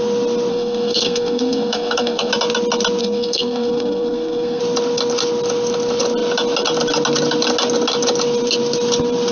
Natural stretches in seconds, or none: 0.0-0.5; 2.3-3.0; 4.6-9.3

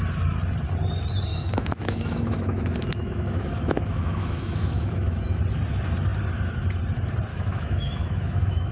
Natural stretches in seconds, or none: 0.0-1.3; 5.4-7.3